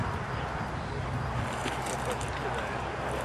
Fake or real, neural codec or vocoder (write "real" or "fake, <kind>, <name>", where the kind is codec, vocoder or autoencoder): real